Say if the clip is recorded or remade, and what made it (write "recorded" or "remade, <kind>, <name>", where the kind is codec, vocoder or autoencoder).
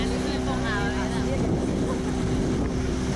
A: recorded